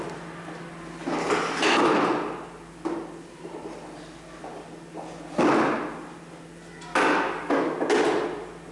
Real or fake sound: real